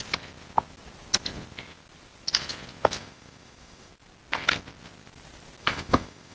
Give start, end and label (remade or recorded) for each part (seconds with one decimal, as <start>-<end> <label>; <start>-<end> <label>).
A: 0.0-3.0 recorded; 3.0-3.9 remade; 3.9-5.6 recorded; 5.6-6.3 remade